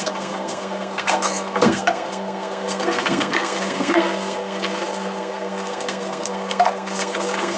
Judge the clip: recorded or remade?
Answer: remade